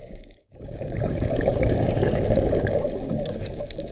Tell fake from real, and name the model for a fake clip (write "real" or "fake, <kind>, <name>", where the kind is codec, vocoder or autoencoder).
fake, codec, DAC